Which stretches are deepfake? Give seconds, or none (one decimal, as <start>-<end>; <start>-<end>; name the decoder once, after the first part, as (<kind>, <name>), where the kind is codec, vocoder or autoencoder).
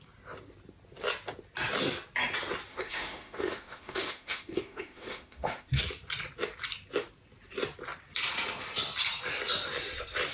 2.7-5.8 (autoencoder, DAC-VAE)